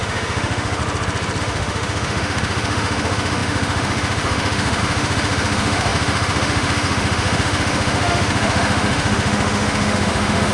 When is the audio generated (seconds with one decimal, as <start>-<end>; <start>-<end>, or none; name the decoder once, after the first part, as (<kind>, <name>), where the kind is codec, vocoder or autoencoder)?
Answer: 0.0-0.8 (autoencoder, DAC-VAE); 1.4-10.5